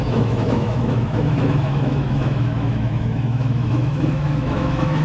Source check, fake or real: fake